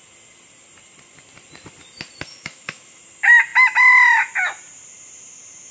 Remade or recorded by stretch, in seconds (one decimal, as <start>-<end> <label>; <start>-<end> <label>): 0.0-2.3 recorded; 2.3-3.0 remade; 3.0-5.7 recorded